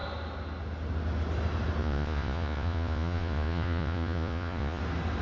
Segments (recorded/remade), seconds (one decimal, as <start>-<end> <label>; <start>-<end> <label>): 0.0-1.8 recorded; 1.8-4.8 remade; 4.8-5.2 recorded